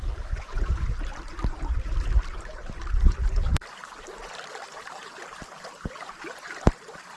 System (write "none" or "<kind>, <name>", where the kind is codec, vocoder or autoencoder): none